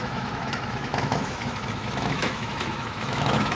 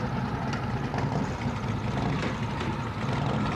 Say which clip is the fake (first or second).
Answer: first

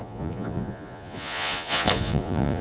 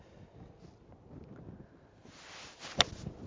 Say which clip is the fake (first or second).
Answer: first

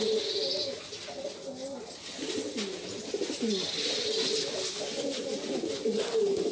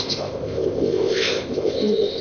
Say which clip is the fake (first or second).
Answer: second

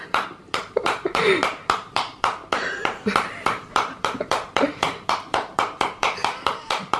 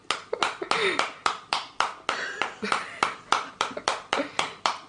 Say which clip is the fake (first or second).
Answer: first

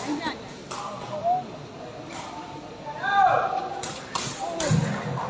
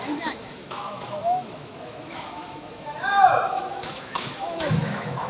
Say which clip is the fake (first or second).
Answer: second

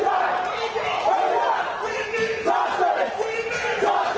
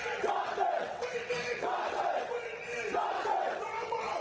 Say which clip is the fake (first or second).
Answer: second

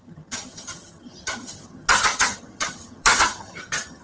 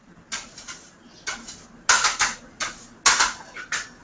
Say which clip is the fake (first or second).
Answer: first